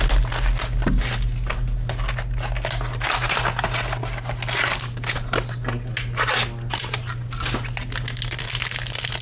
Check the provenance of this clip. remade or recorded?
recorded